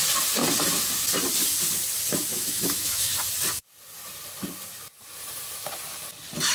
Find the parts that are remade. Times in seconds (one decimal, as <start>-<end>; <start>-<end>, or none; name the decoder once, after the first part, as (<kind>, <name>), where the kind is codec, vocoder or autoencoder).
2.3-3.1 (autoencoder, DAC-VAE)